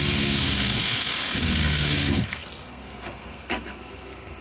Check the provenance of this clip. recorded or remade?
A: remade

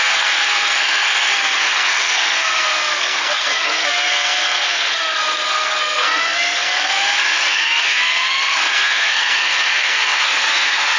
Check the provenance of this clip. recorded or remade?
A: remade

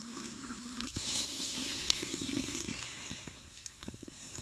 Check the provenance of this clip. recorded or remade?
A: remade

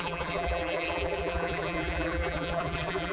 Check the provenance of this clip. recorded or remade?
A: remade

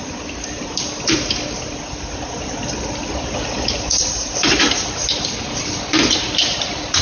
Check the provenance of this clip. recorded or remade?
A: remade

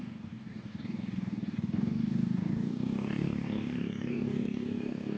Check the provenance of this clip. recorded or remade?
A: remade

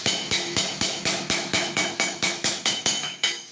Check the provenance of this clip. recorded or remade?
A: remade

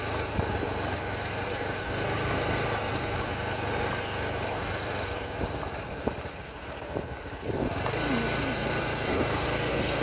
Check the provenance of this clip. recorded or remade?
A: recorded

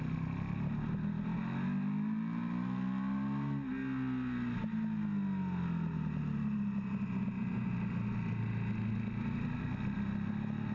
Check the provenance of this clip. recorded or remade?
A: recorded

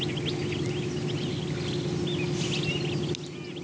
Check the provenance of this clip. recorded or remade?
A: recorded